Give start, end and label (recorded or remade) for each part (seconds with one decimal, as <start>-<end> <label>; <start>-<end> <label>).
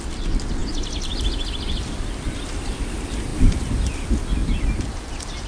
0.0-5.5 recorded